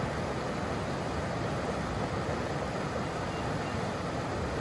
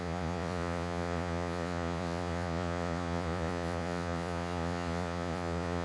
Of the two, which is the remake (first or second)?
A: second